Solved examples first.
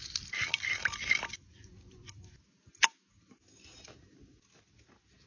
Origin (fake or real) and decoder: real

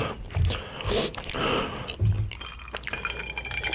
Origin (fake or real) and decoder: real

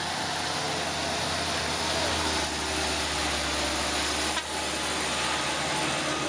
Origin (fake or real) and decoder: real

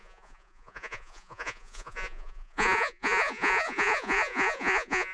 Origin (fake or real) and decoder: fake, vocoder, Vocos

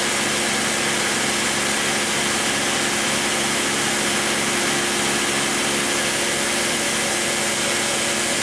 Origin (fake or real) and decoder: real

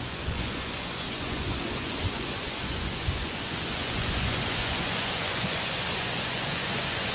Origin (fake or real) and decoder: fake, vocoder, Vocos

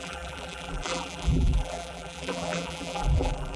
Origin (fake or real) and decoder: fake, vocoder, BigVGAN v2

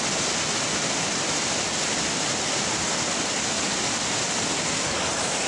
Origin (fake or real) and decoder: real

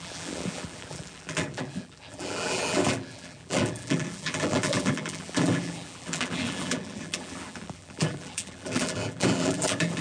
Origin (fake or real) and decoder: fake, vocoder, BigVGAN v2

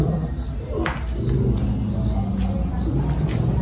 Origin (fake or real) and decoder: real